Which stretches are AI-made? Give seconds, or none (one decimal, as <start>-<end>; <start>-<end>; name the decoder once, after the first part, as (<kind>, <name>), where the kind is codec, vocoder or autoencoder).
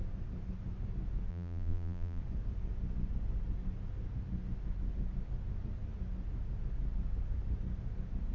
1.3-2.2 (vocoder, BigVGAN v2)